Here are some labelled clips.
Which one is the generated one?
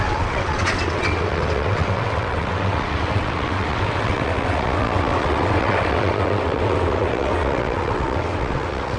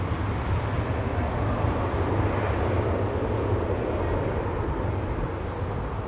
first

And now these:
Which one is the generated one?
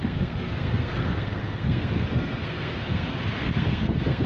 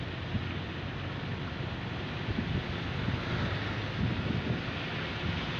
first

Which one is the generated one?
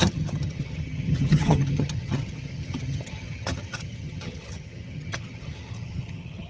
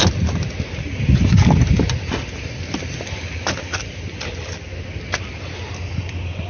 first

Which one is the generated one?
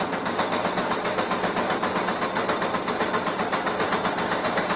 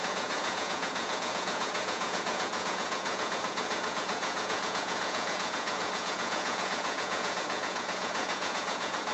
second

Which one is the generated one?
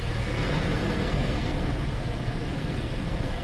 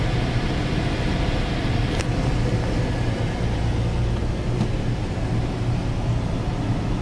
first